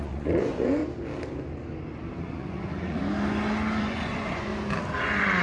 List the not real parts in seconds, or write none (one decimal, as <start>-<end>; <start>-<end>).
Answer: 0.0-0.8; 2.2-3.0; 3.8-4.5; 5.0-5.4